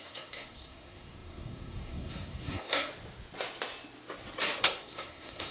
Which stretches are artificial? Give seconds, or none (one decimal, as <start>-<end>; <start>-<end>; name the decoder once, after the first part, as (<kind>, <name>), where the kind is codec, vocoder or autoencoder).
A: 0.0-2.9 (codec, SNAC); 4.6-5.5